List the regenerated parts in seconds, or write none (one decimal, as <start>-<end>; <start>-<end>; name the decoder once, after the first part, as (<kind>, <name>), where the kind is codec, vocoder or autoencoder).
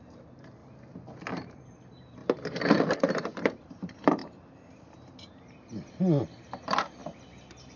0.0-0.6 (vocoder, BigVGAN v2); 1.3-2.2; 3.0-7.0